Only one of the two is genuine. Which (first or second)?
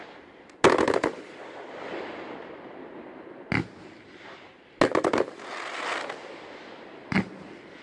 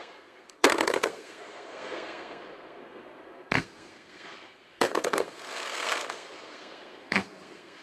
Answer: first